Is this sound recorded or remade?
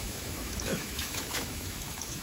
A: remade